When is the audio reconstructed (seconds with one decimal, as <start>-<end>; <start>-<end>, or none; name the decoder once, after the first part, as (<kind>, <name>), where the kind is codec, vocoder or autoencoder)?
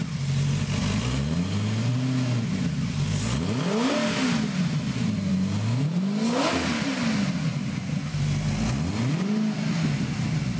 none